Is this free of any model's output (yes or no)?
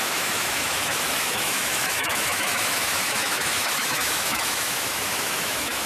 no